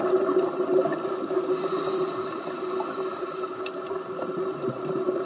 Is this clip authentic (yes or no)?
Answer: yes